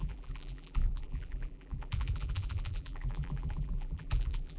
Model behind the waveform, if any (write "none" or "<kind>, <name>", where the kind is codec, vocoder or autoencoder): vocoder, BigVGAN v2